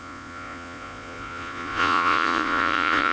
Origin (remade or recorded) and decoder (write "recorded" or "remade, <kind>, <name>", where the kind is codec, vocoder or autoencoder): remade, vocoder, Vocos